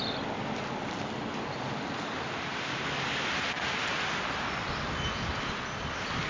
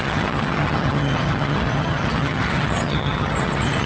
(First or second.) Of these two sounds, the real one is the first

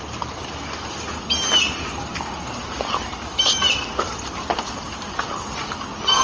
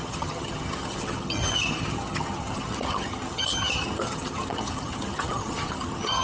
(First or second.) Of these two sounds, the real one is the first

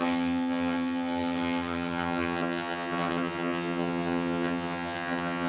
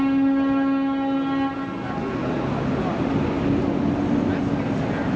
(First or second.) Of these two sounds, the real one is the second